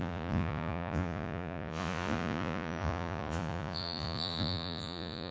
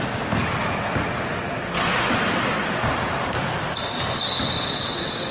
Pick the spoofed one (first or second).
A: first